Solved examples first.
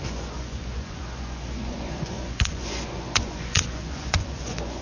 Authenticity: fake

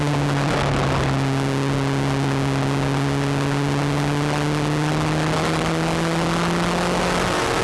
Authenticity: real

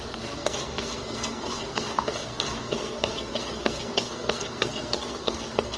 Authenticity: fake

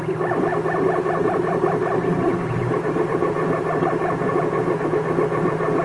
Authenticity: fake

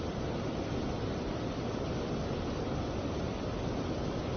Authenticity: real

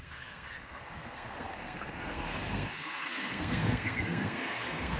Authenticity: fake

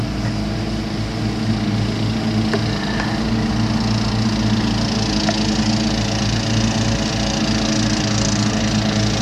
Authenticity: real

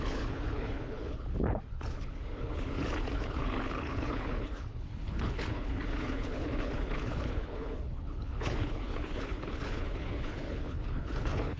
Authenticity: fake